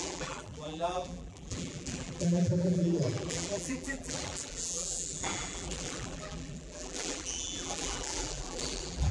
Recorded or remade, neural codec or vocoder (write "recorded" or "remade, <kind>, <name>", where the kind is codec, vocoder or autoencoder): remade, vocoder, BigVGAN v2